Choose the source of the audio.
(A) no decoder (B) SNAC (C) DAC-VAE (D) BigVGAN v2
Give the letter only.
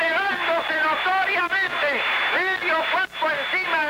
A